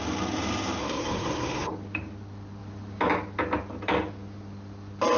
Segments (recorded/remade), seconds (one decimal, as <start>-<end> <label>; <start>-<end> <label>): 0.0-0.8 recorded; 0.8-1.7 remade; 1.7-5.2 recorded